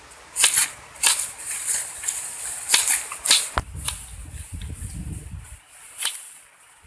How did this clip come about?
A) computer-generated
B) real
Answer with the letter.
B